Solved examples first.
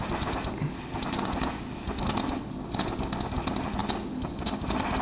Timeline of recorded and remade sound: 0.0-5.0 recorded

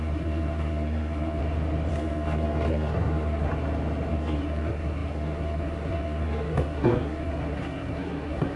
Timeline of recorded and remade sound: 0.0-1.4 remade; 1.4-1.9 recorded; 1.9-3.5 remade; 3.5-4.1 recorded; 4.1-8.6 remade

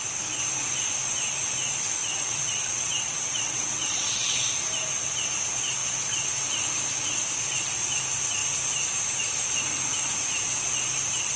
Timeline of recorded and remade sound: 0.0-2.0 recorded; 2.0-4.5 remade; 4.5-11.4 recorded

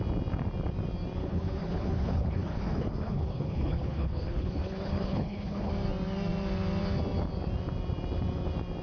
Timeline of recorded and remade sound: 0.0-1.2 recorded; 1.2-5.7 remade; 5.7-8.8 recorded

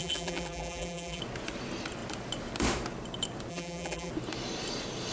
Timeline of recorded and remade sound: 0.0-1.2 remade; 1.2-3.5 recorded; 3.5-4.1 remade; 4.1-5.1 recorded

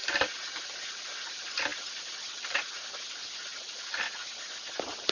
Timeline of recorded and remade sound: 0.0-1.7 recorded; 1.7-2.6 remade; 2.6-3.5 recorded; 3.5-4.2 remade; 4.2-5.1 recorded

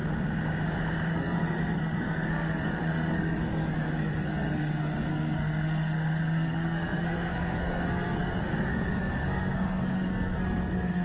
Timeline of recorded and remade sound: 0.0-1.1 recorded; 1.1-11.0 remade